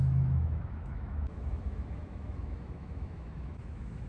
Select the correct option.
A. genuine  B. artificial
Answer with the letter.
B